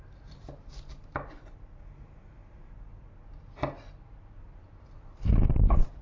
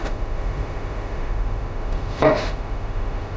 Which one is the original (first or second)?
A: first